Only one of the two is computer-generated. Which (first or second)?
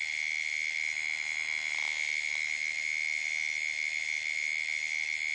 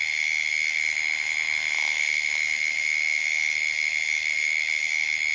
second